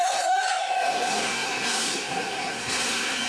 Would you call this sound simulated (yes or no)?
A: yes